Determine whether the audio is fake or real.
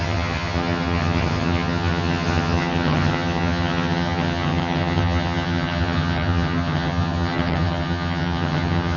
fake